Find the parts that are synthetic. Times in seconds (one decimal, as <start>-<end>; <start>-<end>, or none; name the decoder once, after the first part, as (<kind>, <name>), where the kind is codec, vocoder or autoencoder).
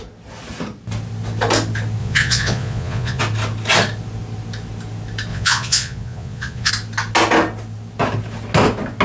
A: 2.0-3.2 (vocoder, Vocos); 5.3-6.7